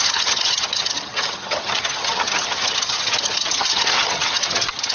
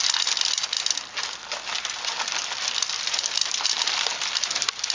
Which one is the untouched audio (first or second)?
second